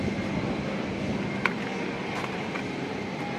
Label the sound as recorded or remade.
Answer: recorded